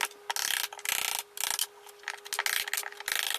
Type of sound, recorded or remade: recorded